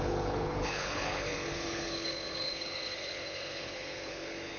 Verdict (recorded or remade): remade